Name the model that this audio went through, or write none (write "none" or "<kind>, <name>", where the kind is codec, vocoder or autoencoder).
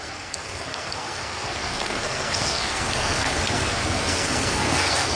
codec, SNAC